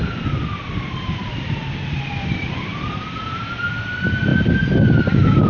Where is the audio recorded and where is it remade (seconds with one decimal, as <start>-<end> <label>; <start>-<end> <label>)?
0.0-5.5 remade